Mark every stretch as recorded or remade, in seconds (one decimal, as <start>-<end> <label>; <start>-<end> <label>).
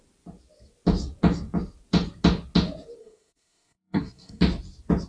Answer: 0.0-3.0 recorded; 3.0-4.4 remade; 4.4-5.1 recorded